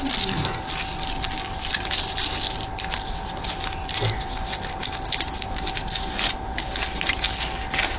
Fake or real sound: real